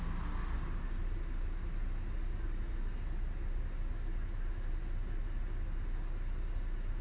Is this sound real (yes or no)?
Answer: yes